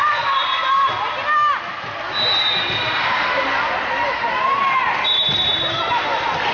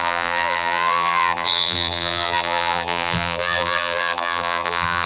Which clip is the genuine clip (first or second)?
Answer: first